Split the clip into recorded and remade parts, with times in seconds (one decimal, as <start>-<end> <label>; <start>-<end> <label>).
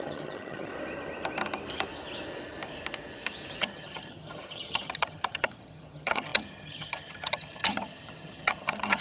0.0-0.7 remade; 0.7-3.6 recorded; 3.6-9.0 remade